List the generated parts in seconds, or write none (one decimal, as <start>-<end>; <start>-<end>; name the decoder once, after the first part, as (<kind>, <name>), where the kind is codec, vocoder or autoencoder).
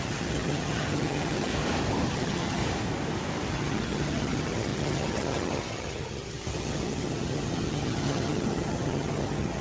0.0-1.5 (vocoder, HiFi-GAN); 2.1-2.6; 3.5-9.6